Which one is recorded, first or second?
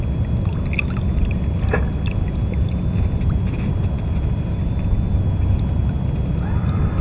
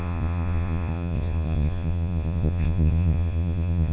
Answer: first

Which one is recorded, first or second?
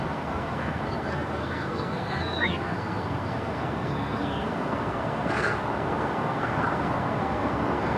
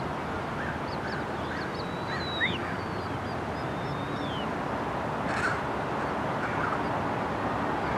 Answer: second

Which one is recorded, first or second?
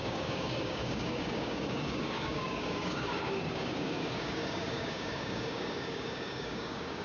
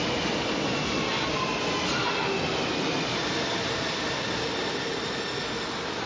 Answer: second